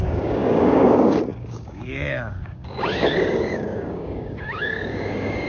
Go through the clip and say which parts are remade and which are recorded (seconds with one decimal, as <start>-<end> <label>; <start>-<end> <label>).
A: 0.0-5.5 remade